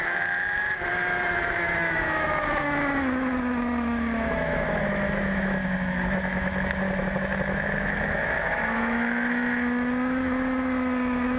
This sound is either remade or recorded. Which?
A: remade